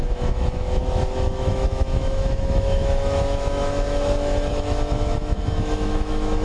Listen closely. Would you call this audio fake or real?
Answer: fake